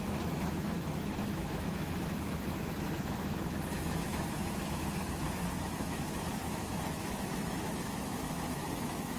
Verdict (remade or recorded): remade